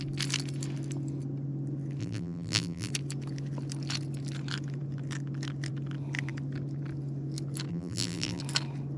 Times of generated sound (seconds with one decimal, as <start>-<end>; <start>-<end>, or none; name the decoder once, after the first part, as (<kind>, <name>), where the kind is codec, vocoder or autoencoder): 2.0-2.9 (vocoder, BigVGAN v2); 7.7-8.4